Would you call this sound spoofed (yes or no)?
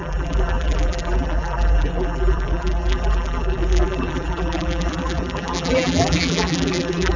yes